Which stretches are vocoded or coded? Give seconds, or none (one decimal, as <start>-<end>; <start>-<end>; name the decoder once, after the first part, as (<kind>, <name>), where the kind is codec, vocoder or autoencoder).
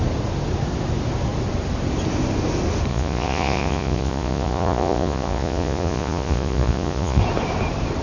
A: 2.9-7.2 (vocoder, Vocos)